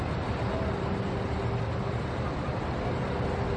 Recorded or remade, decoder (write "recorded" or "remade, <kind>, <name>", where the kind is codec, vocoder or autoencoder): recorded